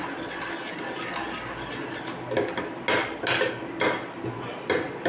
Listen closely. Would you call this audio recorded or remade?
recorded